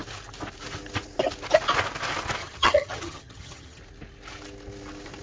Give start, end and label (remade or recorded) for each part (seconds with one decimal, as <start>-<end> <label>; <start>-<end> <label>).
0.0-2.4 recorded; 2.4-3.8 remade; 3.8-5.2 recorded